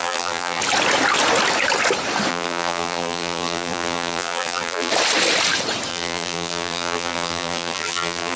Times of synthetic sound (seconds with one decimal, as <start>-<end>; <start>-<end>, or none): 0.0-0.6; 2.3-4.9; 5.9-8.4